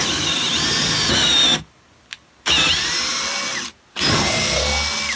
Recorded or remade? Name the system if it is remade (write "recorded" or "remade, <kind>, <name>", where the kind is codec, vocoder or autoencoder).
recorded